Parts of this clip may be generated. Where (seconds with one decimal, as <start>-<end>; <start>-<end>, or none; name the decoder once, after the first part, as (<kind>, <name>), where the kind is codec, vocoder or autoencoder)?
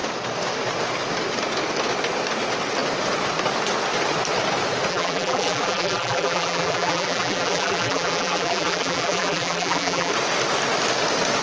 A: 4.9-10.1 (vocoder, BigVGAN v2)